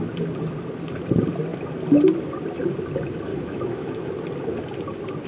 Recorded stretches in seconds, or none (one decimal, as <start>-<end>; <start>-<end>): 0.0-3.3; 4.1-5.3